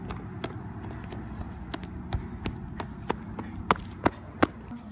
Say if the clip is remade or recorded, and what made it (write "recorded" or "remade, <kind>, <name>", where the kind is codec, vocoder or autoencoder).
recorded